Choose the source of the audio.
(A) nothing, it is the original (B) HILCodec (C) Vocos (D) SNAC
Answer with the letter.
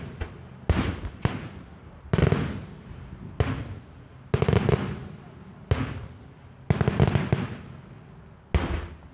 A